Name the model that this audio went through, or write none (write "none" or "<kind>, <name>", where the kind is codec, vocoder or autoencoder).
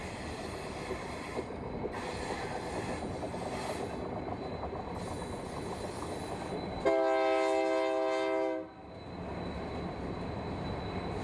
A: none